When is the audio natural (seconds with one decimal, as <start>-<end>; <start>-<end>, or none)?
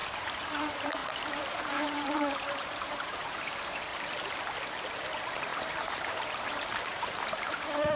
0.0-0.5; 3.9-4.9